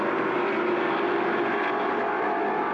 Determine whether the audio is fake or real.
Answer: real